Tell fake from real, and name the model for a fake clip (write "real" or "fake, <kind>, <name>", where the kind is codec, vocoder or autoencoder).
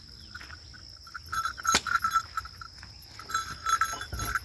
real